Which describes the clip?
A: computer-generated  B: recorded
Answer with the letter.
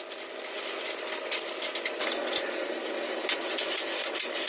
B